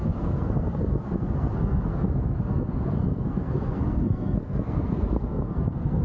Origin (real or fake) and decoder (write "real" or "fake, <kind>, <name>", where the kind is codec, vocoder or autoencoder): fake, codec, SNAC